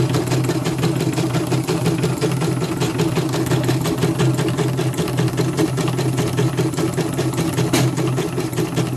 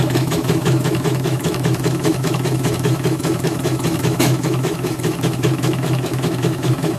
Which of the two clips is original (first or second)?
first